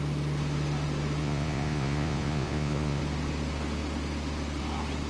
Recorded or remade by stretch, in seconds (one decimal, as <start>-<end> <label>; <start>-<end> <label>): 0.0-1.2 recorded; 1.2-3.0 remade; 3.0-5.1 recorded